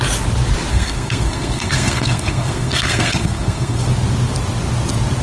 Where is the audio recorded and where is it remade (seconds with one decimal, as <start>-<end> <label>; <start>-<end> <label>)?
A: 0.0-0.7 recorded; 0.7-3.8 remade; 3.8-5.2 recorded